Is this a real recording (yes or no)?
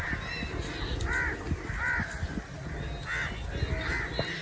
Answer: yes